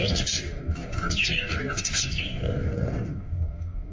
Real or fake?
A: fake